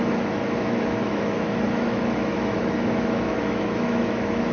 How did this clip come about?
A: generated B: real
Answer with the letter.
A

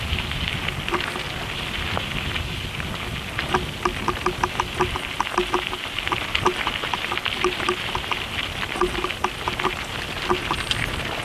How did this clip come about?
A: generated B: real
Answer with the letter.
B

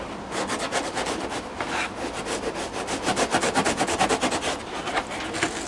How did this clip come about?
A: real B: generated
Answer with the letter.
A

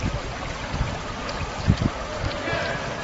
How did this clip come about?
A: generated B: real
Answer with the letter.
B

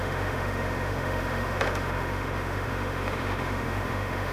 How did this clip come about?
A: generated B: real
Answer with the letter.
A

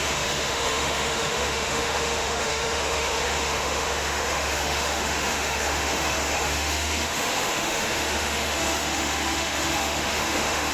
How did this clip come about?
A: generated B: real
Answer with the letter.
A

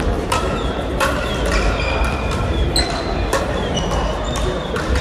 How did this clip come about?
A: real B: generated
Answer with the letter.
A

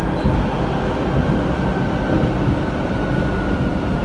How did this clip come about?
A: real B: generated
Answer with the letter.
A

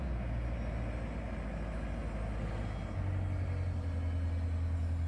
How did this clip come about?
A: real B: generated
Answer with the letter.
A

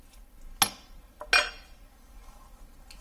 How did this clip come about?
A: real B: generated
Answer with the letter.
A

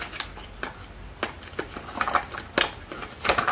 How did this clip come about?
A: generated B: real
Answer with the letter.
B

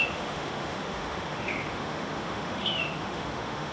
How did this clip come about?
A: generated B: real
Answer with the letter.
A